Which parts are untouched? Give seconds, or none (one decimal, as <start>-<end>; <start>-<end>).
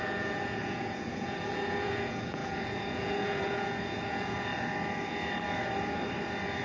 4.5-6.6